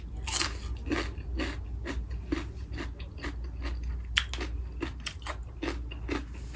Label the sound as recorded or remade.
recorded